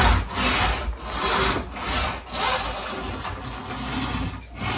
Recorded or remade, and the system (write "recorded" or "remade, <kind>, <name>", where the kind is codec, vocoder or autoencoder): recorded